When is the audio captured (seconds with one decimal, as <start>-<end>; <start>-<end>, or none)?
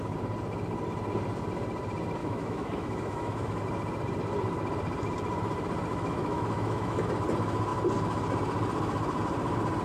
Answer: 0.0-2.2; 3.6-5.9; 7.1-9.8